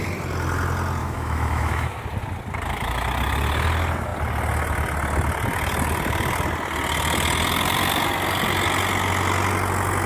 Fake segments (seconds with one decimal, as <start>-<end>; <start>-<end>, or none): 1.0-2.0